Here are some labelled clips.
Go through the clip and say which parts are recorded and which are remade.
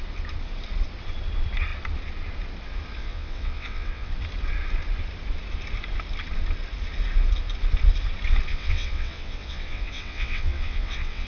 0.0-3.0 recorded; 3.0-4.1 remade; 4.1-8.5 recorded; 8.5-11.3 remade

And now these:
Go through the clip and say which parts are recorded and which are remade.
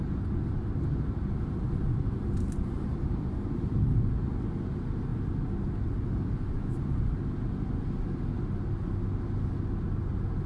0.0-10.5 recorded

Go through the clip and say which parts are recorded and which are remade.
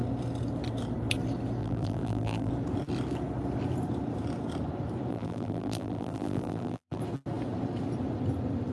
0.0-1.6 recorded; 1.6-2.5 remade; 2.5-5.1 recorded; 5.1-7.0 remade; 7.0-8.7 recorded